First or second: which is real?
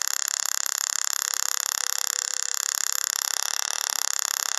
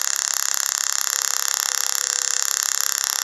second